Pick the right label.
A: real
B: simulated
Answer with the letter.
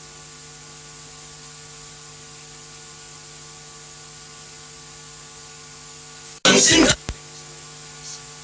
A